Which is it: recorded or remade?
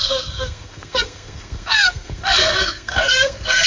remade